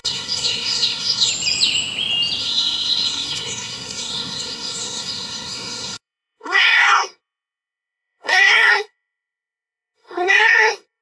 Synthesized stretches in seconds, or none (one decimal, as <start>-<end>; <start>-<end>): 0.0-1.3; 2.4-11.0

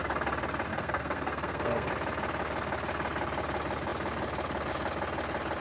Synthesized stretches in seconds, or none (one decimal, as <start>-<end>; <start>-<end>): 0.7-1.9